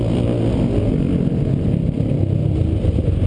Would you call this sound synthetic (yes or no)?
no